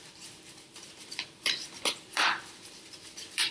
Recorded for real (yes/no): no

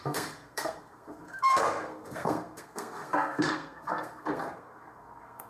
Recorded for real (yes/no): no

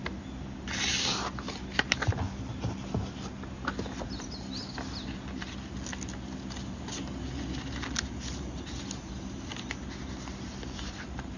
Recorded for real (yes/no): yes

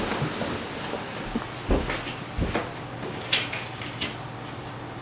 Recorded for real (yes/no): yes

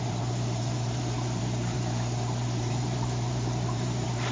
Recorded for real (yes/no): no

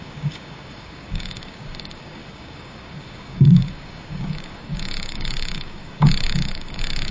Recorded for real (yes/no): no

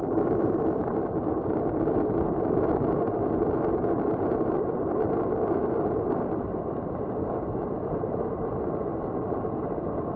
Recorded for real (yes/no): no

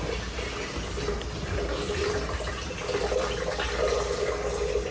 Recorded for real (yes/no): yes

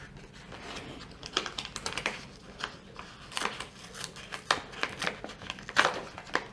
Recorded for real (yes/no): yes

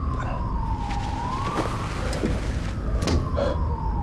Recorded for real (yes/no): yes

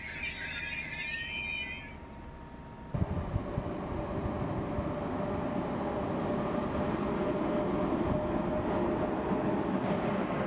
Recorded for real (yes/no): yes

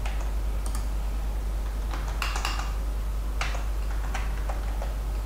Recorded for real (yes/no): yes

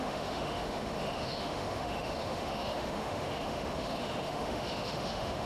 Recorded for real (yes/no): no